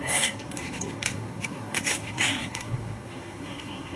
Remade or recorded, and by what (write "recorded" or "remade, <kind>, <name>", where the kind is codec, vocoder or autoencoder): remade, codec, SNAC